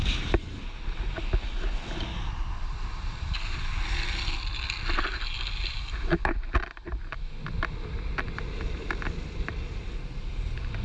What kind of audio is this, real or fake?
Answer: real